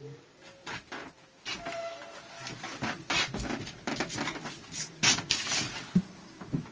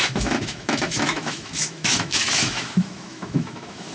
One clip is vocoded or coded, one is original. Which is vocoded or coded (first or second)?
second